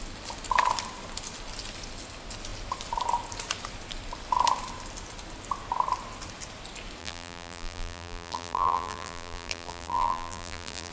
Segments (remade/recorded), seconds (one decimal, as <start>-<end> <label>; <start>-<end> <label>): 0.0-7.0 recorded; 7.0-10.9 remade